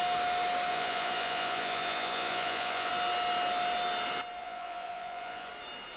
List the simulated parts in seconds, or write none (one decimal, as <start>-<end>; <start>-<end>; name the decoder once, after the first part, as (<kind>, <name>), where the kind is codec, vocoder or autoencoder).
0.7-2.9 (vocoder, Vocos); 4.4-5.5